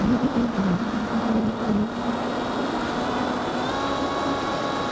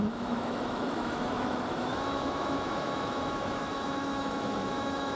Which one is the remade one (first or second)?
second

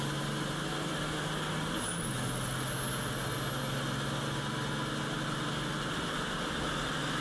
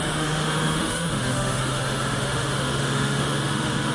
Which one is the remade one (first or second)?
second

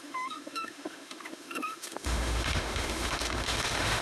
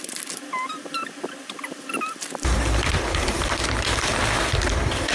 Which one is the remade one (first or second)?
first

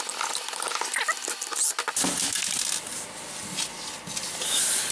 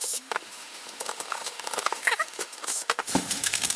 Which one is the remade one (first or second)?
second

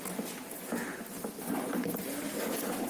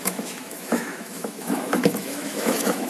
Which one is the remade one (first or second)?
second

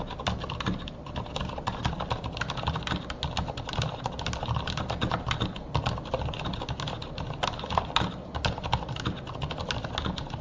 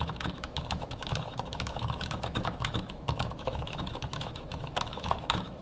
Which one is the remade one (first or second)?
second